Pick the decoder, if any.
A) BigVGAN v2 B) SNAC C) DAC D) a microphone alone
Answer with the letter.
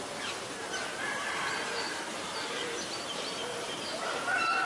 A